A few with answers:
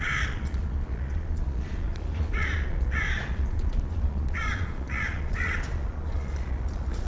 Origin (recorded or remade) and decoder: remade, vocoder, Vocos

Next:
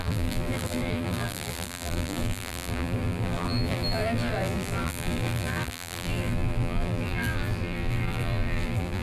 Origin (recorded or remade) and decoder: remade, vocoder, BigVGAN v2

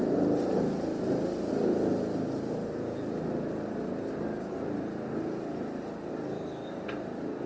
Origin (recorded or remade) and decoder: recorded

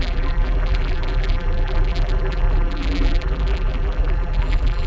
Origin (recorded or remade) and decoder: remade, vocoder, BigVGAN v2